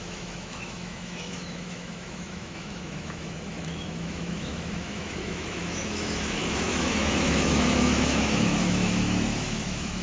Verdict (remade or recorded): remade